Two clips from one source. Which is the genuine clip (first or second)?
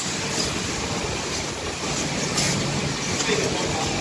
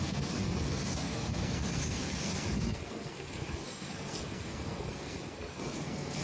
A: first